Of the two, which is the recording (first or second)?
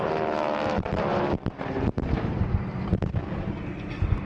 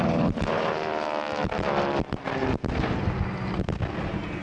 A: second